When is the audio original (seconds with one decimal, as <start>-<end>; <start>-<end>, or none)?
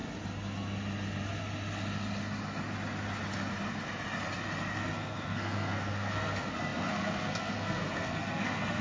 0.0-4.8